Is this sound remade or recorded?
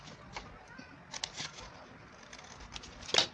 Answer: recorded